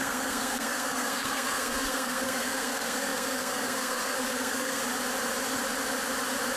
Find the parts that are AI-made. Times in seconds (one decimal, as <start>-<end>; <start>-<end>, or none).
0.0-4.8